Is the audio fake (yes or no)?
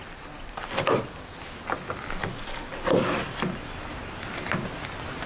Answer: no